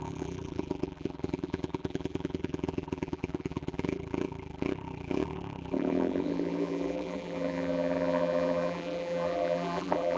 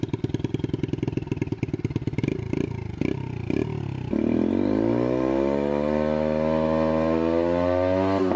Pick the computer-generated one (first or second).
first